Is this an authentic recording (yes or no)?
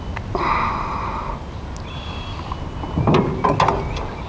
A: yes